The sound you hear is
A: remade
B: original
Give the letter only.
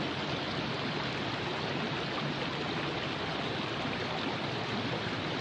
B